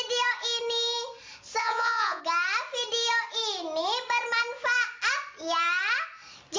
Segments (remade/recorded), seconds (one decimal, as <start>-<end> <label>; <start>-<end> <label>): 0.0-1.6 recorded; 1.6-2.2 remade; 2.2-6.6 recorded